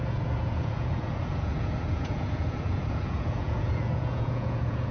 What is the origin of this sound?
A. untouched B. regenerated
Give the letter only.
B